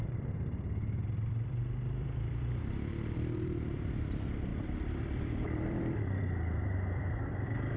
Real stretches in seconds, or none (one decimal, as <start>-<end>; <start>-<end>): none